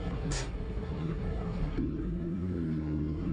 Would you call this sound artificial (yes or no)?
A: yes